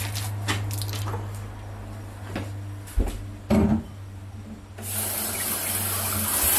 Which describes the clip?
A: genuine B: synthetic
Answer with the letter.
A